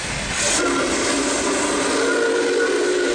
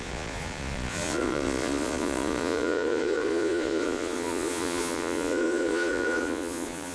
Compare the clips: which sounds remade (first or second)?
second